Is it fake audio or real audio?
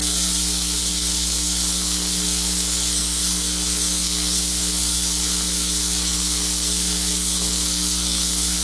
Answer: fake